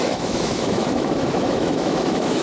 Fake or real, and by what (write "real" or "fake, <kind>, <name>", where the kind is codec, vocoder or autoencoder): fake, autoencoder, DAC-VAE